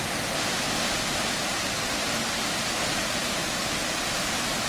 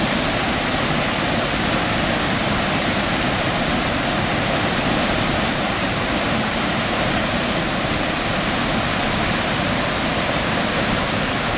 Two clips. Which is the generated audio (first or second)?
second